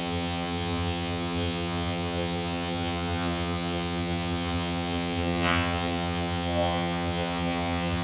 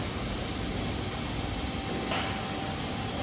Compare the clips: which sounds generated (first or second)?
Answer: first